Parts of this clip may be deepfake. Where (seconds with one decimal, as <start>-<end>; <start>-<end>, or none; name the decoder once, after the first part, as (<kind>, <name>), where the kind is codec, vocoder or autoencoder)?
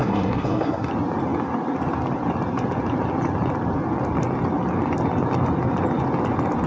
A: 0.0-0.9 (codec, SNAC)